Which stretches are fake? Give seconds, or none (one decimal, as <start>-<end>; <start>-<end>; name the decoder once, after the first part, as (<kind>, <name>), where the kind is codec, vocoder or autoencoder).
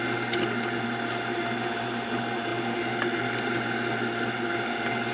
none